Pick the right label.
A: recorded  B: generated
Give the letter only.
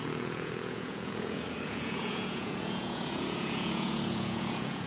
B